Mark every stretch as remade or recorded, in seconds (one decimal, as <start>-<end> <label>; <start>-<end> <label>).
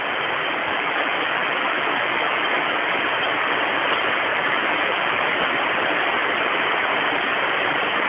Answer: 0.0-0.6 recorded; 0.6-3.0 remade; 3.0-4.3 recorded; 4.3-5.4 remade; 5.4-8.1 recorded